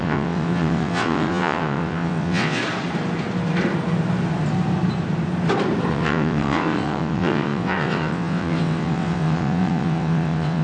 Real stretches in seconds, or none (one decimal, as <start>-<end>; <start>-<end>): 2.6-5.9